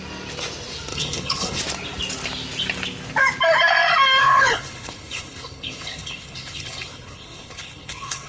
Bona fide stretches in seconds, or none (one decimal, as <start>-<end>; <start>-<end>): 0.0-0.9; 1.6-4.2